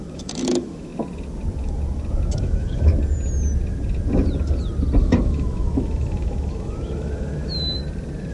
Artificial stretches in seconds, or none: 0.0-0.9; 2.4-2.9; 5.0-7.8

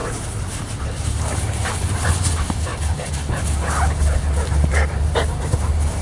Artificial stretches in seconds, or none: none

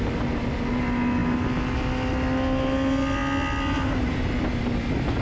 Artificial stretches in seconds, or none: none